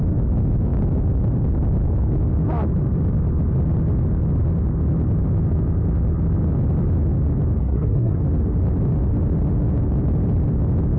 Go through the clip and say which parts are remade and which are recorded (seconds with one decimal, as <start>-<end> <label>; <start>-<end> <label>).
0.0-7.6 recorded; 7.6-8.2 remade; 8.2-11.0 recorded